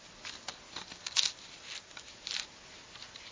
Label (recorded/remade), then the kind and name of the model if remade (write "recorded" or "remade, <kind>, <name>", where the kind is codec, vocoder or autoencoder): recorded